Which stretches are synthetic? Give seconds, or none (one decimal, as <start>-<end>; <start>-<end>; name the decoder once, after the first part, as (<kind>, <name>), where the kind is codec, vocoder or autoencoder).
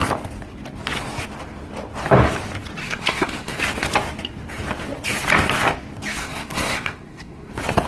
2.8-3.6 (codec, SNAC); 6.2-7.5